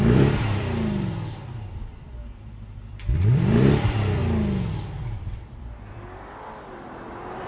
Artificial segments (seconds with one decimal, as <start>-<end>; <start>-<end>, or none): 0.0-4.2; 4.7-7.5

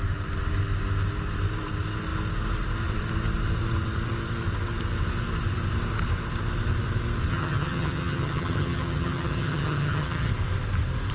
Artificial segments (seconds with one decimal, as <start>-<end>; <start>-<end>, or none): 7.3-10.3

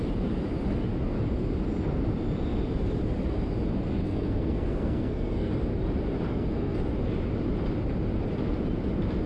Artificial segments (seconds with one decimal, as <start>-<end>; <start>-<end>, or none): 4.0-5.5; 6.3-6.8

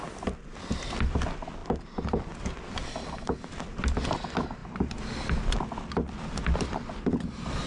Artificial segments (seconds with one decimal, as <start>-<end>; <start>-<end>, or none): none

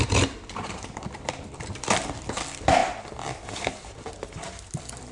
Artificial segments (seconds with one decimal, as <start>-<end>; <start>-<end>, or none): 0.0-5.1

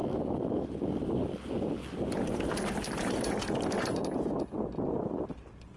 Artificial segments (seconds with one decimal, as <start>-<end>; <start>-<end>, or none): none